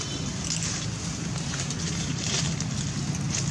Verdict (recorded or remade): recorded